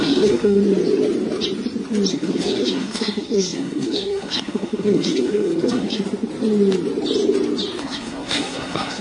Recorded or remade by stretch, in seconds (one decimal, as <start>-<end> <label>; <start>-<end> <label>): 0.0-0.6 remade; 0.6-2.1 recorded; 2.1-6.0 remade; 6.0-7.8 recorded; 7.8-9.0 remade